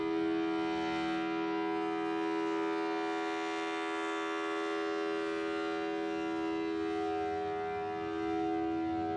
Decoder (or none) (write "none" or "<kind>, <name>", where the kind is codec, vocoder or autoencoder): none